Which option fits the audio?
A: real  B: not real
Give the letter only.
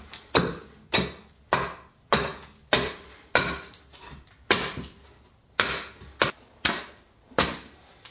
A